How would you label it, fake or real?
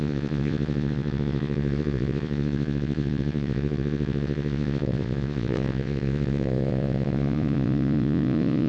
fake